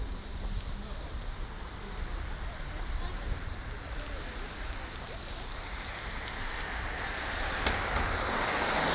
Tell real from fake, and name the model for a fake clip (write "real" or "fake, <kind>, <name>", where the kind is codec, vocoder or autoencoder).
real